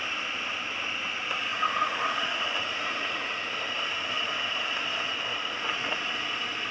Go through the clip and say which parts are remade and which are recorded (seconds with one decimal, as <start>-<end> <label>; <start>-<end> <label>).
0.0-1.5 recorded; 1.5-3.4 remade; 3.4-5.3 recorded; 5.3-6.0 remade; 6.0-6.7 recorded

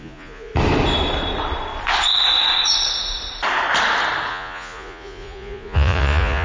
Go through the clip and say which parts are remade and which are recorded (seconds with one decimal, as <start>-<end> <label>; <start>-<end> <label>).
0.0-0.5 remade; 0.5-4.3 recorded; 4.3-6.4 remade

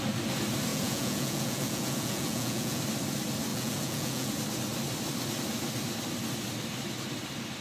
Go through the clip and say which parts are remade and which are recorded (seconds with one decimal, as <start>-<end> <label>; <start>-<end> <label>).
0.0-0.7 recorded; 0.7-2.8 remade; 2.8-3.5 recorded; 3.5-4.3 remade; 4.3-7.6 recorded

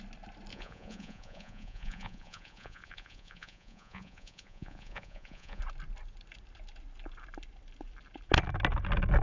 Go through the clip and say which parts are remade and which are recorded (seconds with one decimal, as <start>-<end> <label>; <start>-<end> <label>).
0.0-0.5 recorded; 0.5-5.6 remade; 5.6-9.2 recorded